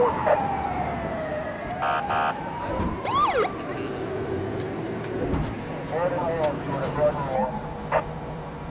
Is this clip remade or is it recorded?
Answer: recorded